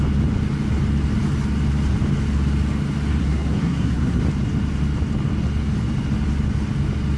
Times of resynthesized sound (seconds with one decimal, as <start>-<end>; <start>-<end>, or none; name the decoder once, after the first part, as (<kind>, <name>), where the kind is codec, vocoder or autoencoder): 3.2-4.2 (codec, SNAC)